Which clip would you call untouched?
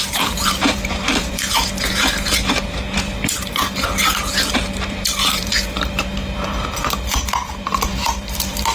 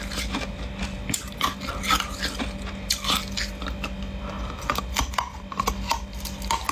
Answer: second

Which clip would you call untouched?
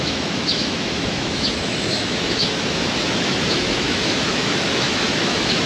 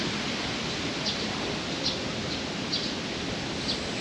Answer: second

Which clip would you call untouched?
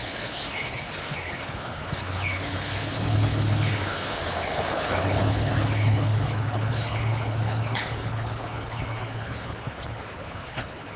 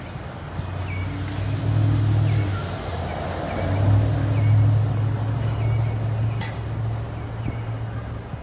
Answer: second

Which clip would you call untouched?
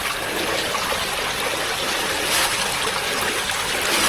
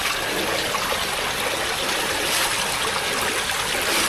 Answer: second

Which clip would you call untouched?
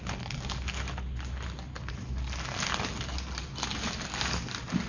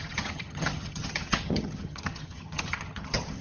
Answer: first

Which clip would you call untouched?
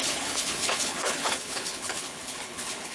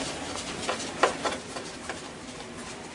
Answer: second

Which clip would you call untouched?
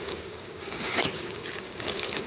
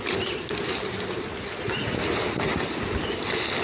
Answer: second